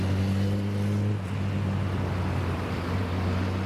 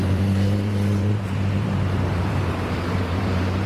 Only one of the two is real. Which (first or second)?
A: first